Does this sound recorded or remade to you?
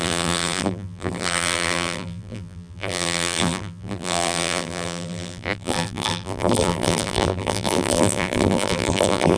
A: remade